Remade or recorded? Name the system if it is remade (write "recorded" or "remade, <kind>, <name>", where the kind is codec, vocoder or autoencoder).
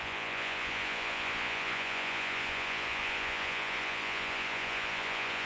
remade, vocoder, Vocos